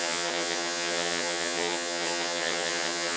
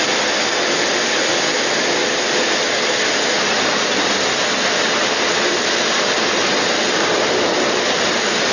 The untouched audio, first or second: second